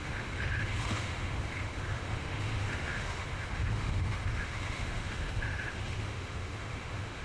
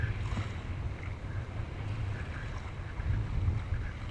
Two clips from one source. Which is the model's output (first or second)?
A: first